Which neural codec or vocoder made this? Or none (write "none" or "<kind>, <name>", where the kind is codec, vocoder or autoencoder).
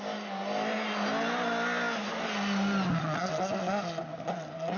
none